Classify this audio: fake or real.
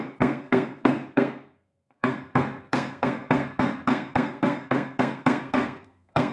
fake